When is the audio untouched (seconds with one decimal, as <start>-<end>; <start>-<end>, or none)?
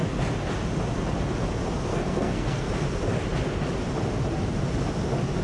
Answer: 0.0-1.9; 2.7-5.4